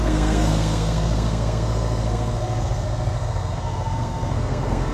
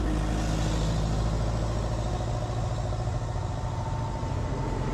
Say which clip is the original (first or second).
second